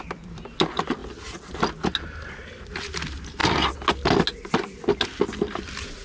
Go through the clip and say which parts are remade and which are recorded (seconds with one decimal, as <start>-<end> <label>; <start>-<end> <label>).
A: 0.0-6.0 recorded